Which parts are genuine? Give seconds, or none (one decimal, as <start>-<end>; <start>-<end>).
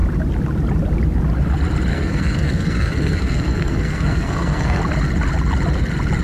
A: 0.0-1.9; 4.8-6.2